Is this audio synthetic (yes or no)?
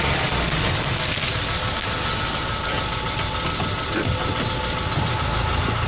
no